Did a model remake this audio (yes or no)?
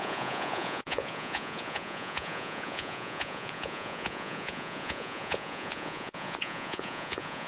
yes